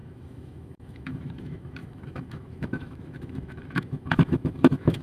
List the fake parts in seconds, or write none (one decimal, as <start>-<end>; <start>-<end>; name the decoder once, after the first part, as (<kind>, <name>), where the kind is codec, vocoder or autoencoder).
0.0-5.0 (autoencoder, DAC-VAE)